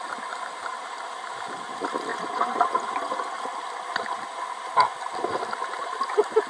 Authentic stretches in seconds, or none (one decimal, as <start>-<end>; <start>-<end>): 0.0-0.7; 1.5-2.1; 2.7-6.5